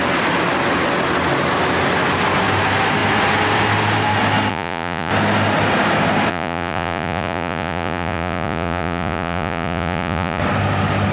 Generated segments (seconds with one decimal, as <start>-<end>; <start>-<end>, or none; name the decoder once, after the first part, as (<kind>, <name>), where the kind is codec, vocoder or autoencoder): 4.5-5.1 (vocoder, Vocos); 6.3-10.4